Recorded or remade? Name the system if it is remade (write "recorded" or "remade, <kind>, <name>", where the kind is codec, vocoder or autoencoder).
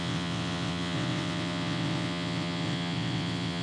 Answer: remade, vocoder, WaveNeXt